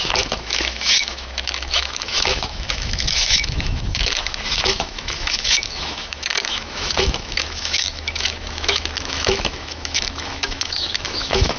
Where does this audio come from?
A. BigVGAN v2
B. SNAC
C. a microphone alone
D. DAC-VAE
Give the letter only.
D